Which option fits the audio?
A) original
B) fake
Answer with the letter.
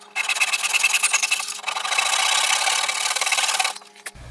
A